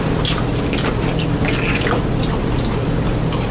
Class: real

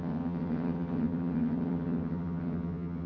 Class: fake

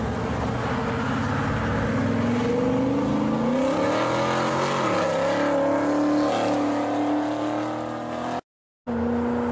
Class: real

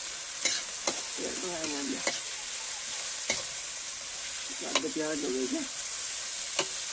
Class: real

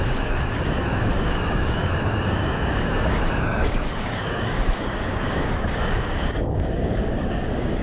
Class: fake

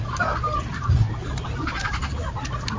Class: real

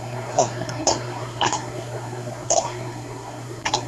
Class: fake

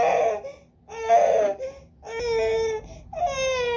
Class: real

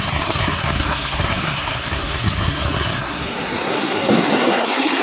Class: fake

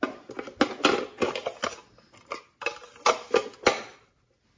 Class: real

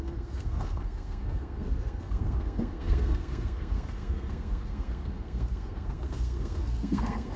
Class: fake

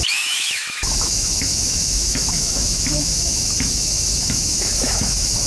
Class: fake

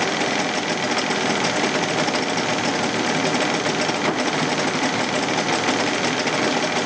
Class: real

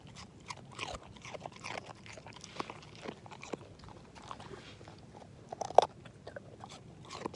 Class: real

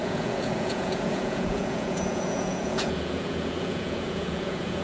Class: fake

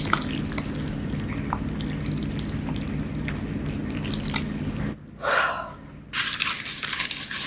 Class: real